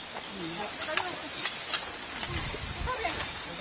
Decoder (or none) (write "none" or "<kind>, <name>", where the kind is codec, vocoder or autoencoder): none